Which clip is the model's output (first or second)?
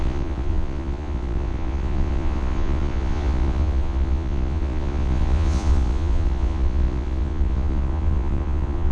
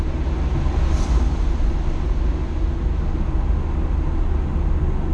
first